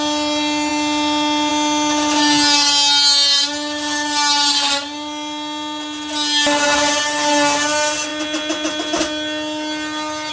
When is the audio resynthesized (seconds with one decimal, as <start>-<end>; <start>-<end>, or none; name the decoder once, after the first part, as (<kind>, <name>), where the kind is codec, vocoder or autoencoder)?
none